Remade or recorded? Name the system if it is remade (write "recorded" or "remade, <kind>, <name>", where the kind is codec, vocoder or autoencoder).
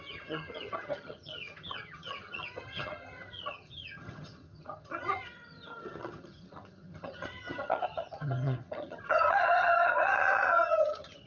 remade, vocoder, HiFi-GAN